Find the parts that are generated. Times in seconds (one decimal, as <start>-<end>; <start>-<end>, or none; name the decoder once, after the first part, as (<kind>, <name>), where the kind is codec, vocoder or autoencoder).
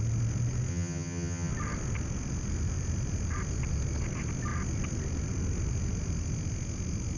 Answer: 0.7-1.5 (vocoder, HiFi-GAN)